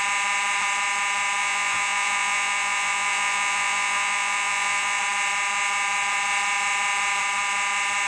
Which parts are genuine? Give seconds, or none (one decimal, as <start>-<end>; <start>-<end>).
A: 0.0-1.4; 5.0-8.1